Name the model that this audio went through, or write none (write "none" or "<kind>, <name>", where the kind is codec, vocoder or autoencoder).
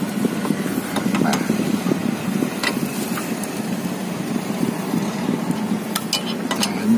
none